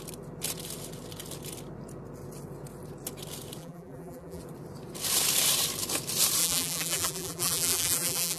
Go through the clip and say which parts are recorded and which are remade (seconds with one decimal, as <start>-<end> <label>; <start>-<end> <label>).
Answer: 0.0-3.6 recorded; 3.6-4.4 remade; 4.4-6.4 recorded; 6.4-8.4 remade